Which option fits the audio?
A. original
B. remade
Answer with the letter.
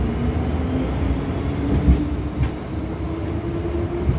A